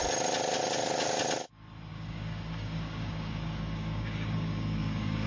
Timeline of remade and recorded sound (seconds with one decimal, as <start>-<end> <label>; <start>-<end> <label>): 0.0-1.9 recorded; 1.9-5.3 remade